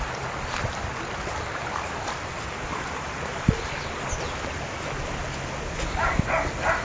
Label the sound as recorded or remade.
recorded